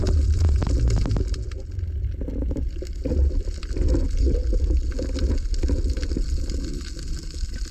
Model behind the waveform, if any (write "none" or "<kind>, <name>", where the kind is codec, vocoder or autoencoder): none